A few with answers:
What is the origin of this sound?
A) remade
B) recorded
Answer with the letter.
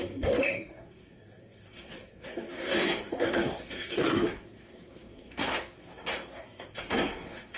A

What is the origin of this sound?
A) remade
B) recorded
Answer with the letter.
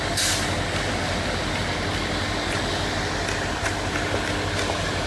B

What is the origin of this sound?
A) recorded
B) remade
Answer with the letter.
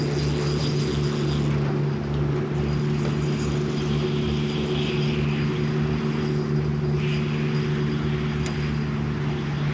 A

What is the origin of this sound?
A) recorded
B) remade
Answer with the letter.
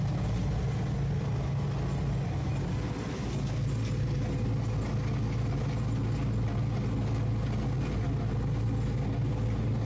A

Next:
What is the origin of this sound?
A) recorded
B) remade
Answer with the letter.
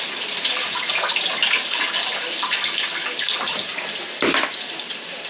A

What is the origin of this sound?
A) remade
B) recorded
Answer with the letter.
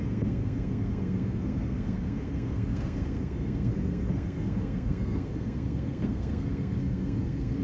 A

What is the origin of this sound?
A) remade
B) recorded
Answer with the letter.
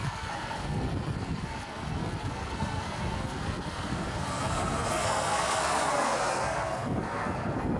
A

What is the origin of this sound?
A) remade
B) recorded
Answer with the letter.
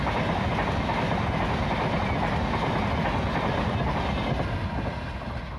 B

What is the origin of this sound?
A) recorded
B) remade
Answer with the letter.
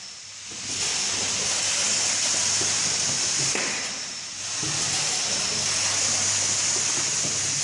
A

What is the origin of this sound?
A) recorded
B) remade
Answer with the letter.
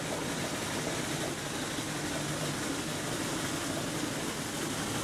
A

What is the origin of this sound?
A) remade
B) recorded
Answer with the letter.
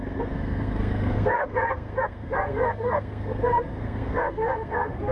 A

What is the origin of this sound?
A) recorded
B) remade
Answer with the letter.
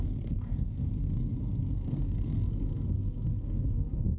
B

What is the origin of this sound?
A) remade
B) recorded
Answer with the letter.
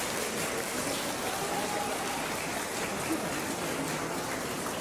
B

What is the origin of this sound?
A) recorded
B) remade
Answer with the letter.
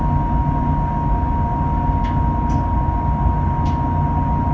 A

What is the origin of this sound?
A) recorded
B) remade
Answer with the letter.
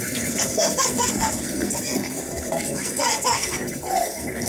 B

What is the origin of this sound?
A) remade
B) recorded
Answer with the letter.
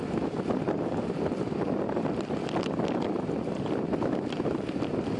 B